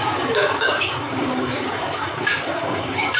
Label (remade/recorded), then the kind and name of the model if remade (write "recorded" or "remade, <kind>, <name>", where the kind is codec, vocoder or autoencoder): remade, codec, DAC